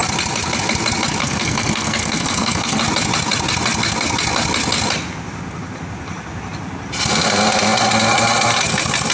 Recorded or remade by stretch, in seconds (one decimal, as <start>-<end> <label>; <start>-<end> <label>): 0.0-1.2 recorded; 1.2-2.8 remade; 2.8-9.1 recorded